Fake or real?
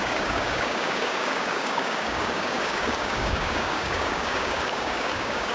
fake